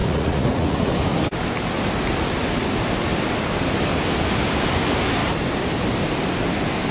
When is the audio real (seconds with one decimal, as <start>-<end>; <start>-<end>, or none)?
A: 0.9-6.9